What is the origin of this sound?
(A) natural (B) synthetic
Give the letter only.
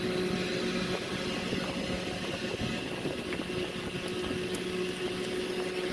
A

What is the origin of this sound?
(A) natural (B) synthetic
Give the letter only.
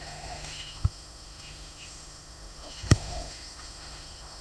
B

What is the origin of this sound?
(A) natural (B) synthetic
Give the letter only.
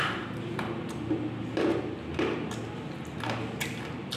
A